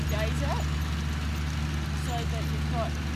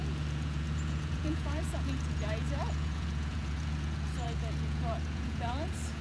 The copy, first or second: second